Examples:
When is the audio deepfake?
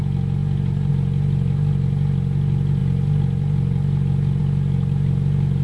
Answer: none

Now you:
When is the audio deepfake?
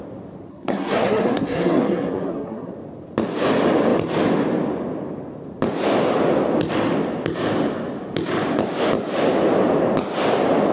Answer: 0.5-2.7 (codec, SNAC)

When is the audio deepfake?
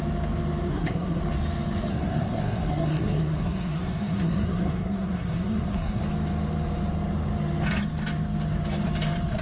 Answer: 0.7-1.2 (codec, SNAC); 1.9-6.0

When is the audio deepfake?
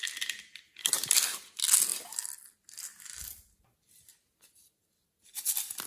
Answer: none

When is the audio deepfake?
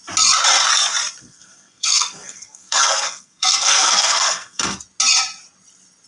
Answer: 1.2-4.8 (codec, SNAC)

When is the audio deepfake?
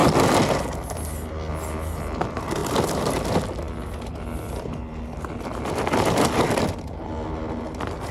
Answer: none